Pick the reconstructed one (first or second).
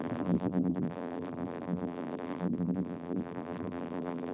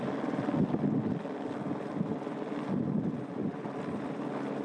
first